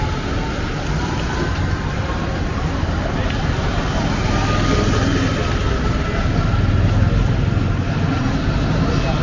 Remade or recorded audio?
recorded